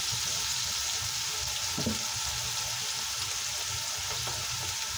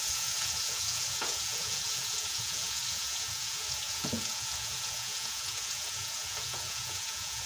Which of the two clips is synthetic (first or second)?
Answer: second